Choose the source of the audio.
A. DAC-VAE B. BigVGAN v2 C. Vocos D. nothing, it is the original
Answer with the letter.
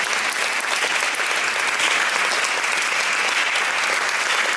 D